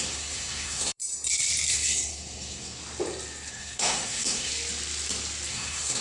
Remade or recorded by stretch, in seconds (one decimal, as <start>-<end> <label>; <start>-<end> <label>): 0.0-1.0 remade; 1.0-1.7 recorded; 1.7-2.8 remade; 2.8-3.5 recorded; 3.5-4.5 remade; 4.5-5.5 recorded; 5.5-6.0 remade